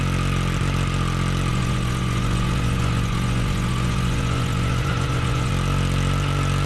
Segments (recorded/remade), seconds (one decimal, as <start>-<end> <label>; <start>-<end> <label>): 0.0-1.5 recorded; 1.5-5.5 remade; 5.5-6.7 recorded